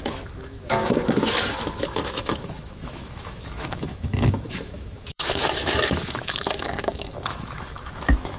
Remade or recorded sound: remade